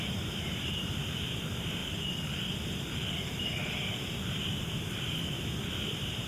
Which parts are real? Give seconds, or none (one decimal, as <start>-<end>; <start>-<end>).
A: 1.8-4.2